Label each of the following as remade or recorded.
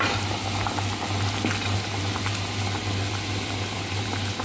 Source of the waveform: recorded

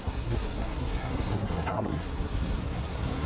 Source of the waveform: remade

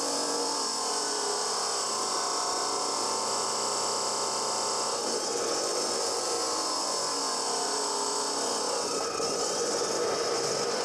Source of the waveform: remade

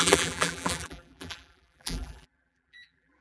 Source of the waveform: remade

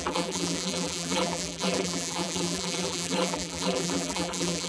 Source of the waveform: remade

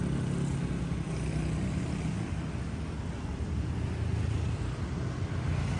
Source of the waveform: recorded